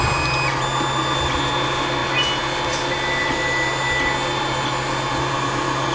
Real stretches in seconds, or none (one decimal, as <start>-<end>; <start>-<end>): 0.0-5.9